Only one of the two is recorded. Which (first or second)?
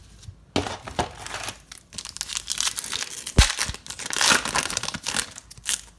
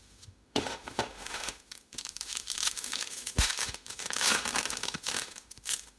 first